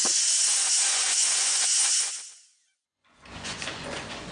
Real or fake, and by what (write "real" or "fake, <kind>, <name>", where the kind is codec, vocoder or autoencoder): fake, vocoder, Vocos